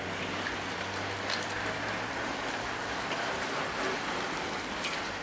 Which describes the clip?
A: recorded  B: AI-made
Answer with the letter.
A